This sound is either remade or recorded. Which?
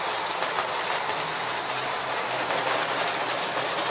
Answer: recorded